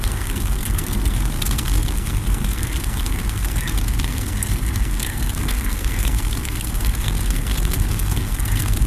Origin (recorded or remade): remade